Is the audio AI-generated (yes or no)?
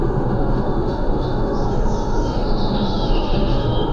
yes